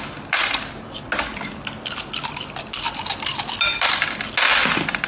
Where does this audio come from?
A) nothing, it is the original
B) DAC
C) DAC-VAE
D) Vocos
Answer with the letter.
A